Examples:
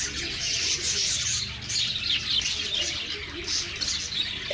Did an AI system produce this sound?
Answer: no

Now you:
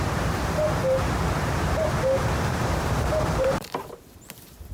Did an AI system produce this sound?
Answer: yes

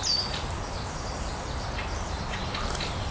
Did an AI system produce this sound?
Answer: no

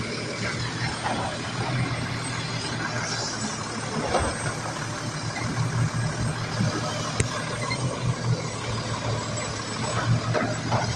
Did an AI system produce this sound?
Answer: no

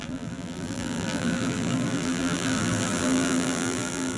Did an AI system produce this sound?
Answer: yes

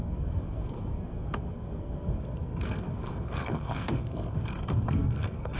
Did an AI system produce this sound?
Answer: yes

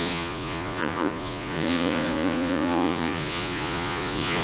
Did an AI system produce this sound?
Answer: yes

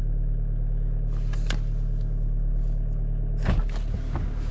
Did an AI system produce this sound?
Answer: no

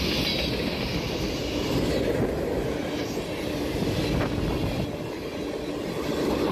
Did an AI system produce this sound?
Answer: no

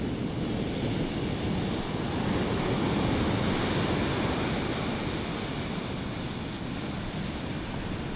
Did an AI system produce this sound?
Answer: no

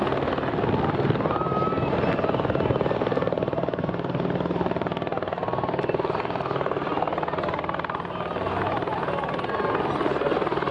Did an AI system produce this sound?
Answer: no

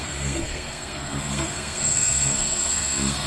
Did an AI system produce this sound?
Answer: yes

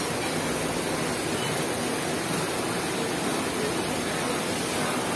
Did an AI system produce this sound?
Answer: no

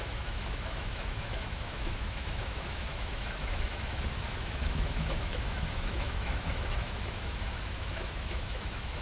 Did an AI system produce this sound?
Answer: yes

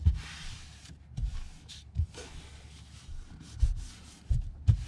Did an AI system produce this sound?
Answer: no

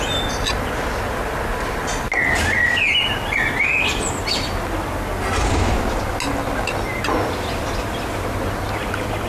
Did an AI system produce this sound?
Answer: no